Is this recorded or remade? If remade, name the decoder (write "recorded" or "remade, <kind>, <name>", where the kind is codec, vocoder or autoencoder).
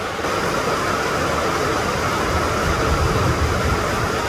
recorded